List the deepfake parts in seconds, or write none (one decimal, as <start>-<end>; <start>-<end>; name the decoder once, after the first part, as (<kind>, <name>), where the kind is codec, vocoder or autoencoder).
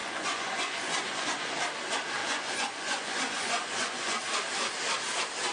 0.0-1.5 (vocoder, Vocos); 2.2-4.2